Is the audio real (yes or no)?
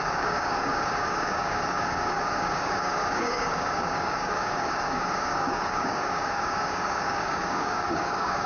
no